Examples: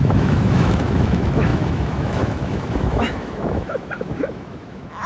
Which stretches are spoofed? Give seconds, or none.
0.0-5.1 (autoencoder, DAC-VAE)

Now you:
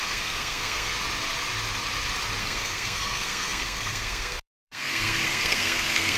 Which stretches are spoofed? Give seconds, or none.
0.0-0.9 (codec, SNAC); 2.4-6.2

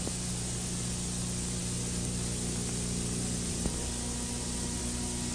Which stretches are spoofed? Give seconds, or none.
none